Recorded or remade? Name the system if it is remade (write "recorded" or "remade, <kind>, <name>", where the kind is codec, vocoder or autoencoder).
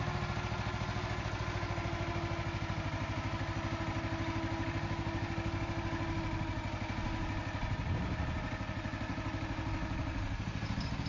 recorded